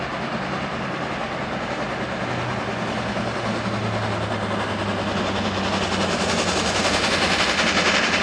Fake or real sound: real